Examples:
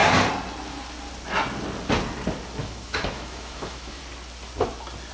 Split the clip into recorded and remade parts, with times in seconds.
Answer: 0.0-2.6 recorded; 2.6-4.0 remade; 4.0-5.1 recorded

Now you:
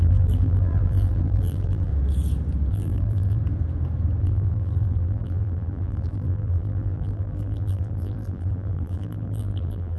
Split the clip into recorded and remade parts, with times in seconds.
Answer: 0.0-1.9 remade; 1.9-2.7 recorded; 2.7-3.4 remade; 3.4-4.2 recorded; 4.2-10.0 remade

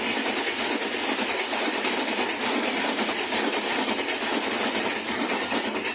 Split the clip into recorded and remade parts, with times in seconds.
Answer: 0.0-5.9 recorded

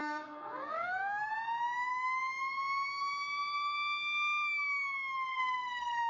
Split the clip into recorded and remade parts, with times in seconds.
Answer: 0.0-1.3 remade; 1.3-5.3 recorded; 5.3-6.1 remade

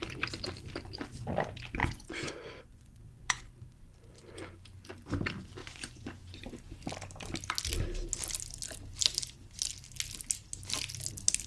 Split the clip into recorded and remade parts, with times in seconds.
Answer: 0.0-1.8 recorded; 1.8-3.5 remade; 3.5-5.6 recorded; 5.6-6.5 remade; 6.5-11.5 recorded

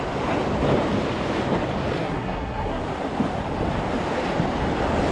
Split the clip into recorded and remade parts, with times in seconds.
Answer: 0.0-2.0 recorded; 2.0-2.8 remade; 2.8-5.1 recorded